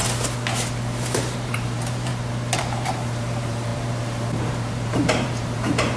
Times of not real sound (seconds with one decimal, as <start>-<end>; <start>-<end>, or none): 1.0-2.1; 2.6-6.0